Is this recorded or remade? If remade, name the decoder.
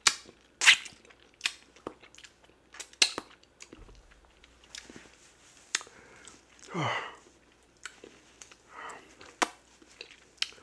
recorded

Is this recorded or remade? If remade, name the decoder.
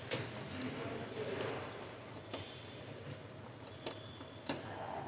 remade, vocoder, BigVGAN v2